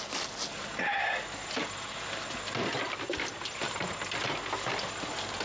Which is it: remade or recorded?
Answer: recorded